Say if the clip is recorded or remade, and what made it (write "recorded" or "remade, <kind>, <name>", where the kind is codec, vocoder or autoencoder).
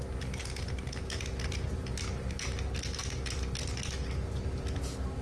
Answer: recorded